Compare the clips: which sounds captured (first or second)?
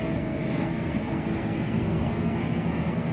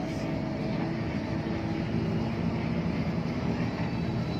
second